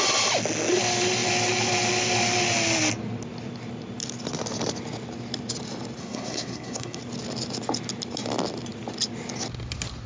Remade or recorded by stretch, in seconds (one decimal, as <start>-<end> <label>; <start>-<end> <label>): 0.0-6.0 recorded; 6.0-7.0 remade; 7.0-10.1 recorded